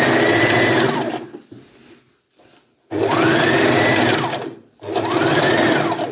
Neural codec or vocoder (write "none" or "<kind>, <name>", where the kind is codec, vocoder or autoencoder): none